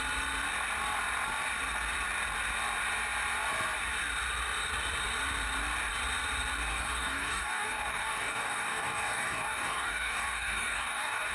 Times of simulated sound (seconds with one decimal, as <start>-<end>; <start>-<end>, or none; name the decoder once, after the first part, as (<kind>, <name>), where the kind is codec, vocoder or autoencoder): 6.7-11.3 (codec, DAC)